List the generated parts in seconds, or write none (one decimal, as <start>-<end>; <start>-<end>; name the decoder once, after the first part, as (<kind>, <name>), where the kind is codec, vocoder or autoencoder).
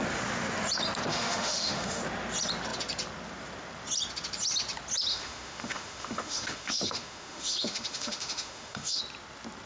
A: 1.1-2.0 (autoencoder, DAC-VAE); 5.1-9.0